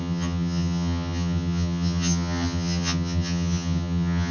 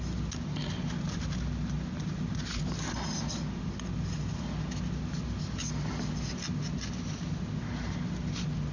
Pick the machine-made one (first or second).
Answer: first